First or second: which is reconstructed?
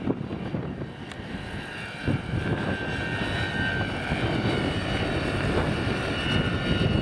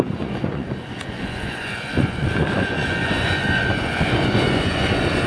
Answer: second